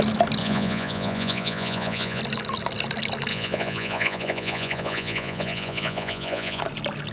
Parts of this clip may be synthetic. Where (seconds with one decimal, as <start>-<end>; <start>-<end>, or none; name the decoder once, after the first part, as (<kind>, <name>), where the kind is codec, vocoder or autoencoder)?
0.4-2.2 (vocoder, Vocos); 3.3-6.6